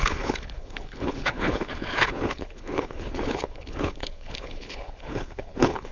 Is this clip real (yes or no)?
no